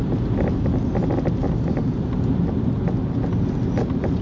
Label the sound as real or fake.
real